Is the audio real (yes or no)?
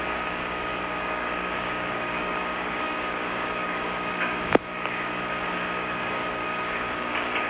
no